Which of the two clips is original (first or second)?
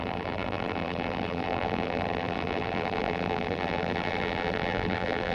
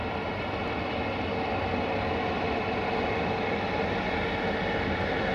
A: second